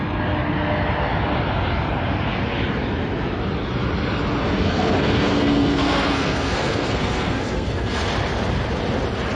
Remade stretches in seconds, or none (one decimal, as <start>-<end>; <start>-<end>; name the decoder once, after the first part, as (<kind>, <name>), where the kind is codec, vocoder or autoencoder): 4.4-8.0 (codec, SNAC)